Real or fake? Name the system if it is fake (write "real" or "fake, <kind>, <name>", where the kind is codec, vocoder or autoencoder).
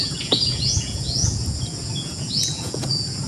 fake, vocoder, Vocos